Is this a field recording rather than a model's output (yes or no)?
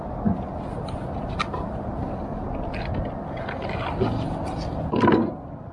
yes